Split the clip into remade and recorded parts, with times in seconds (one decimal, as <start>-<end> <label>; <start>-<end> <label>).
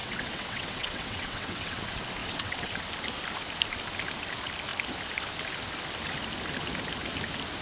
0.0-1.8 remade; 1.8-2.2 recorded; 2.2-2.7 remade; 2.7-7.6 recorded